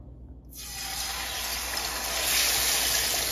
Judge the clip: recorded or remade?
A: recorded